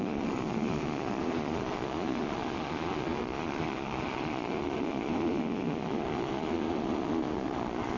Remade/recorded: remade